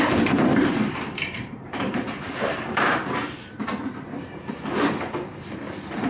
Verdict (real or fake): fake